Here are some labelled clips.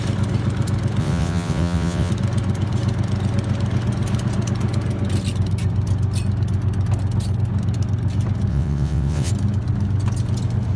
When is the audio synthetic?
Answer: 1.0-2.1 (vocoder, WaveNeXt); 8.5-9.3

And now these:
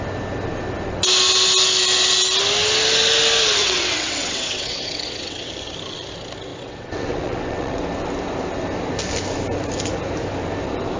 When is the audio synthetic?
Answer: 3.6-5.5 (vocoder, WaveNeXt); 6.5-7.8

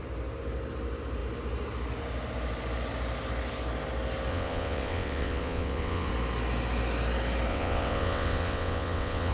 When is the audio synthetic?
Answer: 4.3-6.1 (vocoder, WaveNeXt); 7.5-9.3

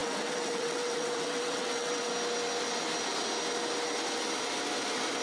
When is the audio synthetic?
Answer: 0.0-2.1 (vocoder, WaveNeXt)

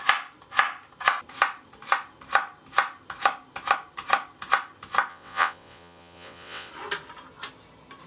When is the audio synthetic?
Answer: 5.1-6.7 (vocoder, WaveNeXt)